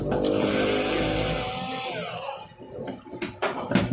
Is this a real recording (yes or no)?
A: yes